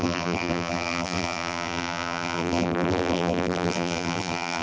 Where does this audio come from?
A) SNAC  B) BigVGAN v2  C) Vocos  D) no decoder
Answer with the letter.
B